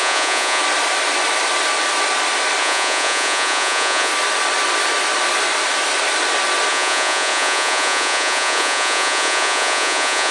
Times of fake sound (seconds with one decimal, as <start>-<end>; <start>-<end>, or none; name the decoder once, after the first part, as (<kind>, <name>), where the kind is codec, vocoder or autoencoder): 0.0-0.6 (vocoder, Vocos); 2.6-4.1; 6.7-10.3